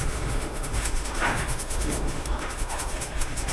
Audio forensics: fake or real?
fake